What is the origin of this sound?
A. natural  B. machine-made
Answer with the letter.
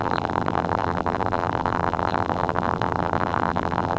B